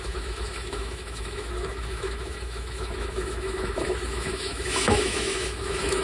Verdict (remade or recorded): remade